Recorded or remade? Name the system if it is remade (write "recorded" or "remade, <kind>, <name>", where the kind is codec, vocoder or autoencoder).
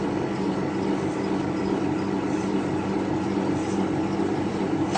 recorded